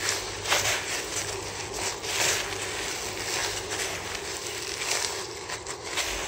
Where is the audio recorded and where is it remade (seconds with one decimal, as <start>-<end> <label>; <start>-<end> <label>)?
0.0-6.3 recorded